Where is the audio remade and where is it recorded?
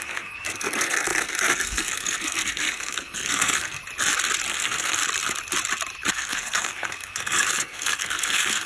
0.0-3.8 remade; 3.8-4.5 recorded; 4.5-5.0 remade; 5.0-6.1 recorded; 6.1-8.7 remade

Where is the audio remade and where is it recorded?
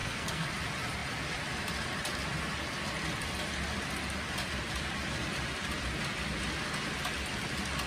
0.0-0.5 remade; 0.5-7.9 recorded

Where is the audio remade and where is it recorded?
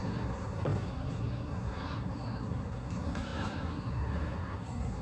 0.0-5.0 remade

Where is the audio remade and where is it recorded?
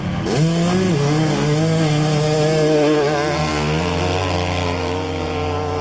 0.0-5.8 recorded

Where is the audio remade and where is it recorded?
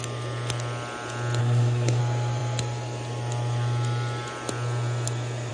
0.0-1.4 recorded; 1.4-2.0 remade; 2.0-5.5 recorded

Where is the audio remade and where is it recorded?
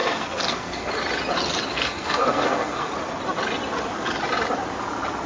0.0-0.9 remade; 0.9-1.7 recorded; 1.7-2.9 remade; 2.9-5.3 recorded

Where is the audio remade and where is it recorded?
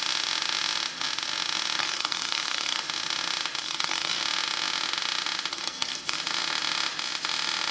0.0-1.8 recorded; 1.8-2.8 remade; 2.8-3.6 recorded; 3.6-4.2 remade; 4.2-5.5 recorded; 5.5-6.2 remade; 6.2-7.7 recorded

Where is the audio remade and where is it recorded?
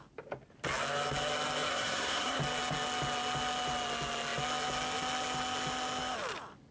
0.0-1.7 recorded; 1.7-2.4 remade; 2.4-6.7 recorded